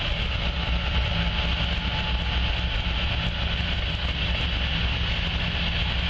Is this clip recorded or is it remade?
recorded